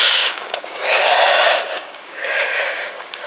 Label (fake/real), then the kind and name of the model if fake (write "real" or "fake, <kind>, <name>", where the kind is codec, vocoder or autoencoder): fake, codec, DAC